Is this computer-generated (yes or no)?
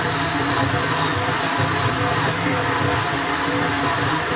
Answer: no